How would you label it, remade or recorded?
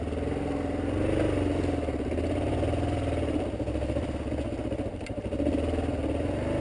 recorded